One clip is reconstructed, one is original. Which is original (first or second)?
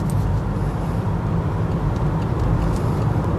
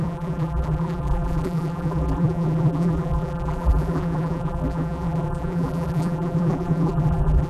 first